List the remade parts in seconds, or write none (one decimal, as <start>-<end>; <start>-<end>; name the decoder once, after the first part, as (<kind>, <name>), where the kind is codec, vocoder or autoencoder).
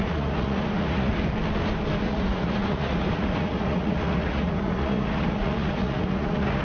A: 0.0-1.1 (vocoder, Vocos); 2.0-6.6